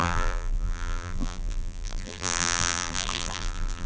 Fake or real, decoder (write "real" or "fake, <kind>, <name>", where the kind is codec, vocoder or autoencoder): fake, vocoder, BigVGAN v2